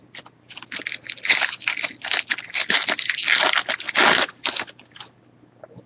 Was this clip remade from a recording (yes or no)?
no